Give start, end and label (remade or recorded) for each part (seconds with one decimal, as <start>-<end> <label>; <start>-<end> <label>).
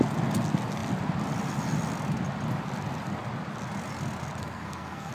0.0-4.4 recorded; 4.4-5.1 remade